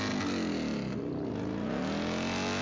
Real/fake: real